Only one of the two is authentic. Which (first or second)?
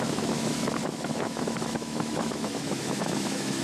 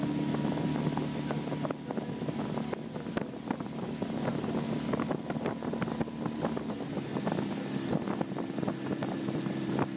second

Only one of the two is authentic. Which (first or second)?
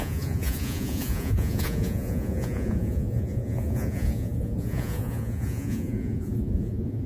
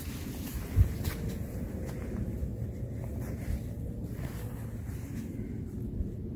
second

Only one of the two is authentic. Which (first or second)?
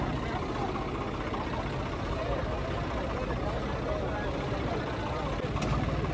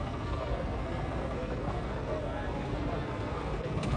first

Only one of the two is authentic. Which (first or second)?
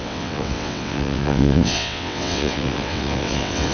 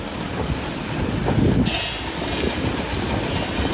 second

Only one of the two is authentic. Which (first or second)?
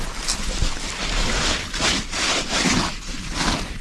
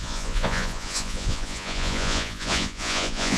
first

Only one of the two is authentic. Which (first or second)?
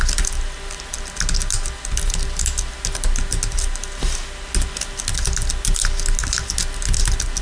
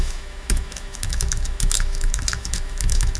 first